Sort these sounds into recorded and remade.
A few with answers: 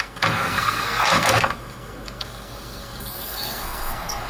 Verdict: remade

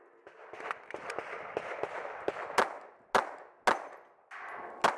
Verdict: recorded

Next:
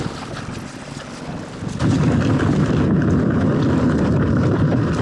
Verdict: recorded